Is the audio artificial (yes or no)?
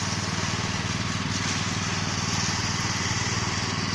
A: no